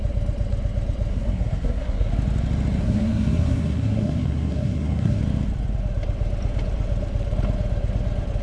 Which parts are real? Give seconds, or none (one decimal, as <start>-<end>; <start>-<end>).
0.0-1.1; 2.1-2.8; 5.2-8.4